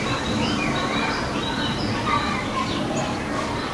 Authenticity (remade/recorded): remade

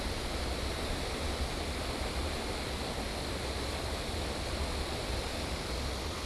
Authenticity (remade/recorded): recorded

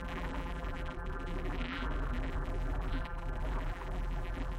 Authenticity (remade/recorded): remade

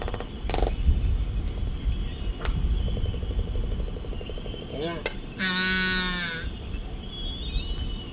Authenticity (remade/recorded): recorded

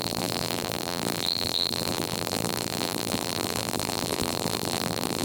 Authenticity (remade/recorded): remade